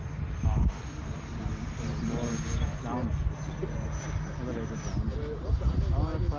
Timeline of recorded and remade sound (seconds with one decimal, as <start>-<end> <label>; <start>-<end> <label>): 0.0-6.4 recorded